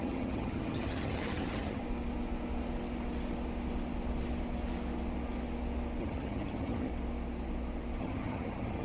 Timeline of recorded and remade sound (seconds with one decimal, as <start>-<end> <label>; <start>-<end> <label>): 0.0-1.8 remade; 1.8-6.0 recorded; 6.0-6.9 remade; 6.9-8.0 recorded; 8.0-8.8 remade